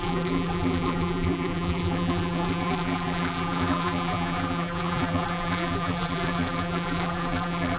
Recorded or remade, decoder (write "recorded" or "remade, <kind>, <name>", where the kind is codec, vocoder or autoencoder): remade, vocoder, BigVGAN v2